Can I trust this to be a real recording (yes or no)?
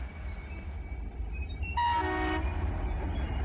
yes